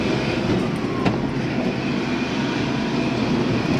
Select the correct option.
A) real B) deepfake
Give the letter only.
A